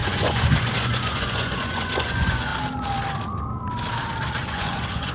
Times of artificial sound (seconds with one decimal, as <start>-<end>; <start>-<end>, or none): 0.0-2.5; 4.5-5.1